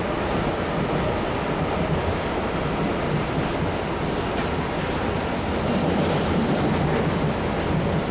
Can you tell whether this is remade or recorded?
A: recorded